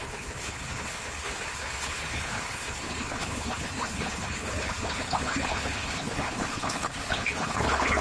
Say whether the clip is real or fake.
fake